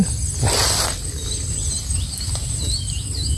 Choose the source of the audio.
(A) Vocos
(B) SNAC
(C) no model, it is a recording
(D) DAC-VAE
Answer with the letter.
C